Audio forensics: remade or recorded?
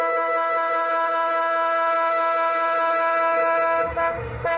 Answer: remade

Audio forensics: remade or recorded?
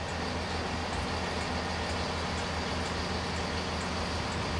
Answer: recorded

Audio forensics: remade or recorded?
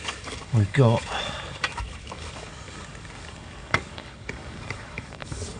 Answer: remade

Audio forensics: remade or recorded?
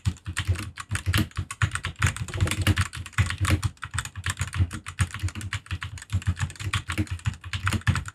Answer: recorded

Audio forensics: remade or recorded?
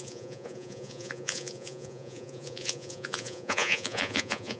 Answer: remade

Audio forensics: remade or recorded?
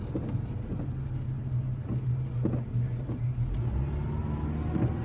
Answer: recorded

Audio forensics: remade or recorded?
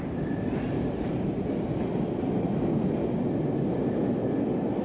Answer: recorded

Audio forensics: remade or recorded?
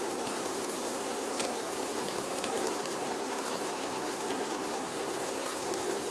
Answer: remade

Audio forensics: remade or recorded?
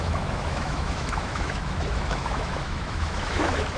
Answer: remade